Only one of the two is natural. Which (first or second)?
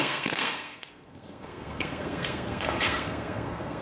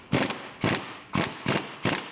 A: second